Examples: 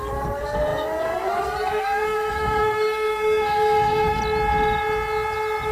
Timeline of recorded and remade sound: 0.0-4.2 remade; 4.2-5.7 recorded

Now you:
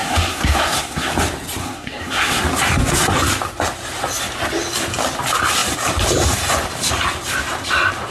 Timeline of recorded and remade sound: 0.0-1.1 remade; 1.1-1.6 recorded; 1.6-2.4 remade; 2.4-8.1 recorded

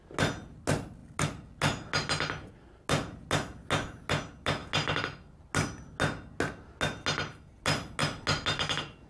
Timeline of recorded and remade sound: 0.0-9.1 recorded

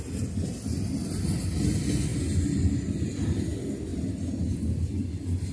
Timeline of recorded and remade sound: 0.0-5.5 recorded

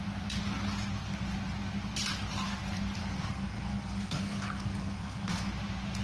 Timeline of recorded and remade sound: 0.0-3.0 recorded; 3.0-5.5 remade; 5.5-6.0 recorded

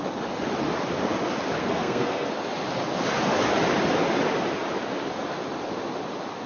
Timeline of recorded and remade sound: 0.0-1.6 recorded; 1.6-2.3 remade; 2.3-6.5 recorded